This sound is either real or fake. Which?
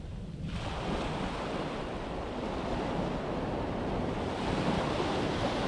real